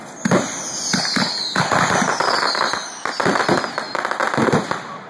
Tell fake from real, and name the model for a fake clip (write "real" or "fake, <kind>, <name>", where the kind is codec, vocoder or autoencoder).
real